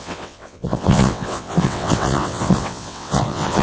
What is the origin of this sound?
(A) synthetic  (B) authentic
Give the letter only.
A